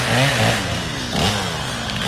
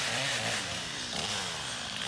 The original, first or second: first